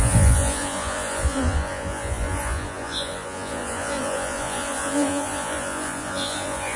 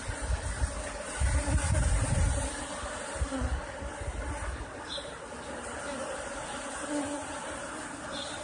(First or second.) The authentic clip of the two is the second